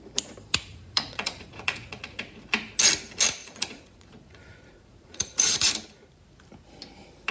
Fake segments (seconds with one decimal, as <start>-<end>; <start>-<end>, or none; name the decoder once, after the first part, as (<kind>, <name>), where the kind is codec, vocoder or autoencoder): 0.7-2.4 (vocoder, Vocos); 3.4-5.7